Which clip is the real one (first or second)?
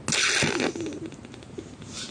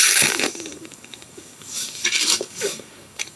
first